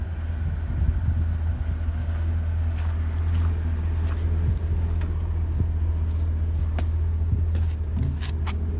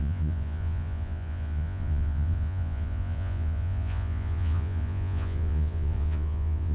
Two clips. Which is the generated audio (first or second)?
second